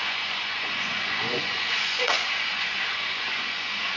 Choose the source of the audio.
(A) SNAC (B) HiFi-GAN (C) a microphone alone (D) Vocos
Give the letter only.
D